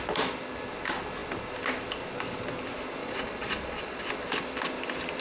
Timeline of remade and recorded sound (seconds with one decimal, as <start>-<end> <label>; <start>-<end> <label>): 0.0-3.0 recorded; 3.0-4.1 remade; 4.1-5.2 recorded